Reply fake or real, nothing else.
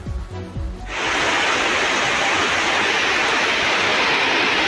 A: real